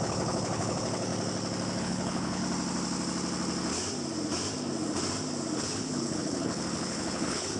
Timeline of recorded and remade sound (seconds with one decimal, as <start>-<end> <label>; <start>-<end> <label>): 0.0-1.1 remade; 1.1-1.8 recorded; 1.8-2.4 remade; 2.4-5.6 recorded; 5.6-7.6 remade